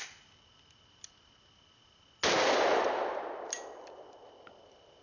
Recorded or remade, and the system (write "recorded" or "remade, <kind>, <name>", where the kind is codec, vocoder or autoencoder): recorded